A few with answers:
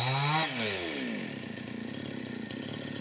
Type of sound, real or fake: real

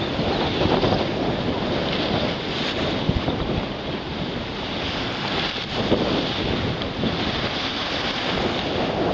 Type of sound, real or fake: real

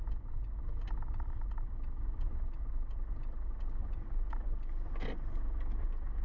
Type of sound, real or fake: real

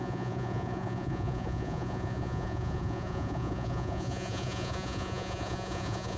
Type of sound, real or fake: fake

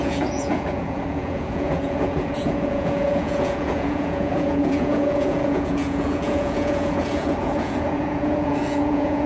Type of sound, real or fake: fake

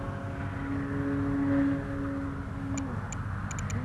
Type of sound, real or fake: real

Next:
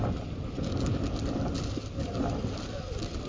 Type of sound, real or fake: real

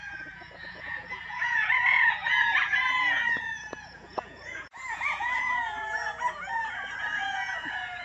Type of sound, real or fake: fake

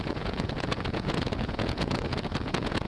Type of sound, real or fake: fake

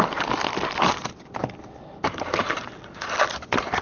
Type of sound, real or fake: real